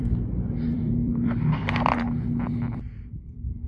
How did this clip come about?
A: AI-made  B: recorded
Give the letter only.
A